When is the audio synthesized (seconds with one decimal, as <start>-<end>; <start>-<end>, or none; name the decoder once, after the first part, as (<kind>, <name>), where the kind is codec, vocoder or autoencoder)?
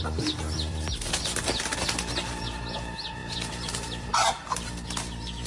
none